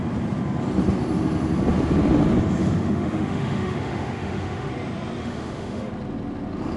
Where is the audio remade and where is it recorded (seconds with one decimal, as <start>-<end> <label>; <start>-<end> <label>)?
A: 0.0-2.6 recorded; 2.6-4.7 remade; 4.7-5.2 recorded; 5.2-5.9 remade; 5.9-6.8 recorded